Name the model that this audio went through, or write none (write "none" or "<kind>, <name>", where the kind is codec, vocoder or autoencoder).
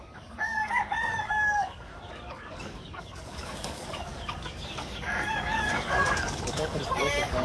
codec, DAC